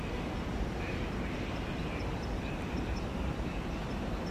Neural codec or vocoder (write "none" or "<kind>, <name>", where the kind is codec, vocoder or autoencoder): none